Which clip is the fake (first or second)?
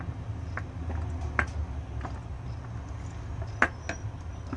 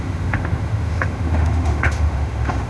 second